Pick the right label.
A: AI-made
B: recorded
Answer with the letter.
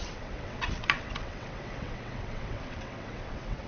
A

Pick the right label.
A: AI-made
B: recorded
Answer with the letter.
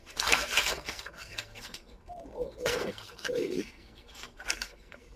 A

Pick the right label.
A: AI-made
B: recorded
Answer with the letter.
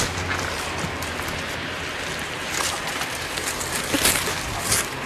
B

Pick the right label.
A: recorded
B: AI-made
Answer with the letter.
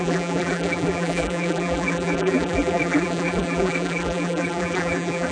B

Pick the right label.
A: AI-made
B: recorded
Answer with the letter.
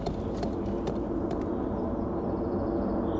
B